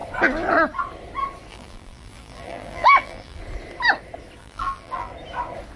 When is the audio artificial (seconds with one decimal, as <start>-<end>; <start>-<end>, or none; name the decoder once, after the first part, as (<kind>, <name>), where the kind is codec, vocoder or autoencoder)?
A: 1.5-3.4 (vocoder, BigVGAN v2); 4.4-5.1